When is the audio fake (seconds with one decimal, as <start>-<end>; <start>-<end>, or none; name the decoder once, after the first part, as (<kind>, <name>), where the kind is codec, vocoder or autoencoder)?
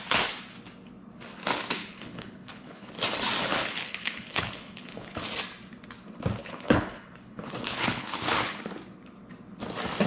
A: 1.8-2.9 (codec, HILCodec); 3.5-5.2; 6.4-8.6